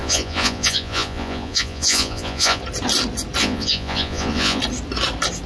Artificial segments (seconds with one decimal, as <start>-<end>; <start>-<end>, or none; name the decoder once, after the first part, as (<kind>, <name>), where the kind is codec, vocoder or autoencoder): 0.0-2.6 (vocoder, Vocos); 3.4-4.6